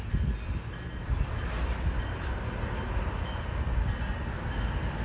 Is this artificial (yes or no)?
no